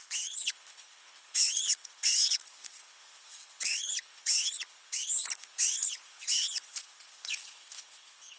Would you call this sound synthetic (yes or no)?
yes